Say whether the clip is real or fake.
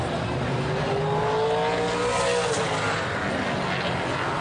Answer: real